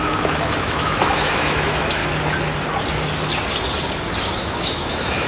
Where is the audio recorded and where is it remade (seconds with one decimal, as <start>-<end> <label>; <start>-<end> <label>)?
0.0-2.0 remade; 2.0-4.4 recorded; 4.4-5.3 remade